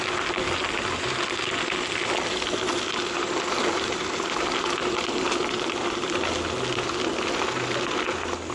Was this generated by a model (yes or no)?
no